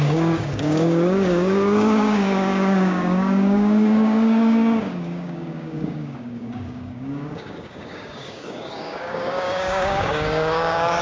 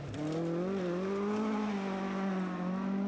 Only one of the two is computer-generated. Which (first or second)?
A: first